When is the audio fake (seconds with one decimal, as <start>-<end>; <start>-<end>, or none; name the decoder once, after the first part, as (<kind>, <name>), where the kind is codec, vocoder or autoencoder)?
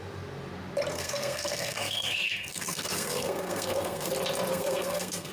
0.9-4.1 (codec, SNAC); 4.5-5.3